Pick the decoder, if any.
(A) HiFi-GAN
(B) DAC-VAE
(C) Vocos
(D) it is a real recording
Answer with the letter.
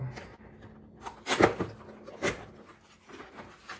D